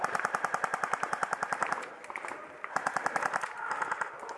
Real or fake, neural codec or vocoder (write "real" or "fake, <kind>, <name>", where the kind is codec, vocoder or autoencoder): real